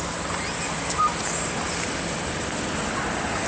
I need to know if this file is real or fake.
real